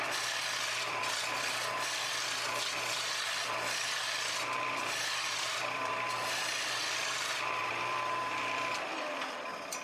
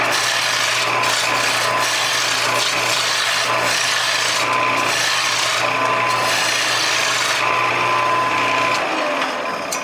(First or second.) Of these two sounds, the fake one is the first